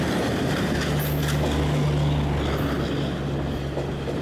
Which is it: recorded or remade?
recorded